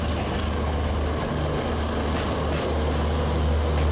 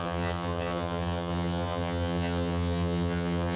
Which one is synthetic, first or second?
second